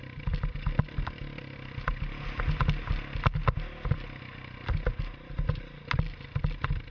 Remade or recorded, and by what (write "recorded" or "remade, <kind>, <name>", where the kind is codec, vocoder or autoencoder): recorded